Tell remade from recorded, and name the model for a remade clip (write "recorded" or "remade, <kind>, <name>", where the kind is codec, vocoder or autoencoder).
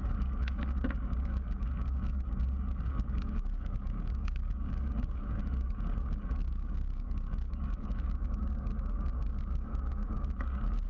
remade, codec, DAC